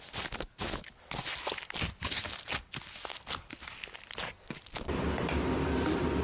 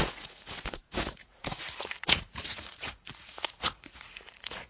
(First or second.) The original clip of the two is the first